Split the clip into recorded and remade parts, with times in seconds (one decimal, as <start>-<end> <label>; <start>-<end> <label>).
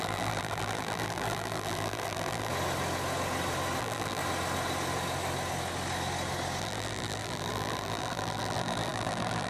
0.0-2.5 remade; 2.5-3.8 recorded; 3.8-4.2 remade; 4.2-6.6 recorded; 6.6-9.5 remade